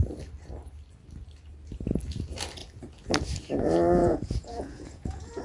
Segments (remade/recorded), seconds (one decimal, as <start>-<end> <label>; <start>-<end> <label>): 0.0-4.0 recorded; 4.0-5.4 remade